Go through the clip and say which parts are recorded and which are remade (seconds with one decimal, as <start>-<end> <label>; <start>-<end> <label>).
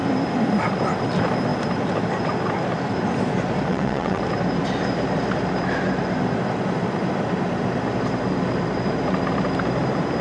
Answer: 0.0-3.7 recorded; 3.7-4.2 remade; 4.2-10.2 recorded